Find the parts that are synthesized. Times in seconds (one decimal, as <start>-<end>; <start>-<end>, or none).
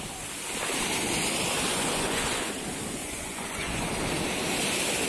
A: 1.7-2.5; 3.0-3.9